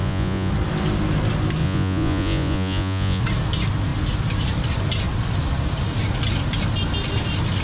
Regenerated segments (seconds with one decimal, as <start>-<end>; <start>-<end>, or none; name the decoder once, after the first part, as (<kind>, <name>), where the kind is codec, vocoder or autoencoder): 0.0-0.5 (vocoder, Vocos); 1.6-3.2